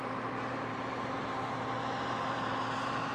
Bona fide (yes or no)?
no